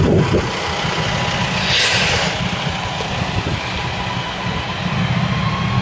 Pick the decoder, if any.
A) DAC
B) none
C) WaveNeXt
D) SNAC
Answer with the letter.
B